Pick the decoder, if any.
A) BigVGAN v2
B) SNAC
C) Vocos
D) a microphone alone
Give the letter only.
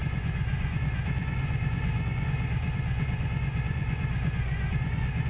C